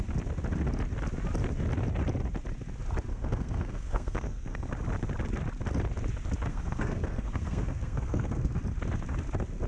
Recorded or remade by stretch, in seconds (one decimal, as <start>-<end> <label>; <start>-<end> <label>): 0.0-3.1 recorded; 3.1-4.7 remade; 4.7-6.5 recorded; 6.5-8.6 remade; 8.6-9.7 recorded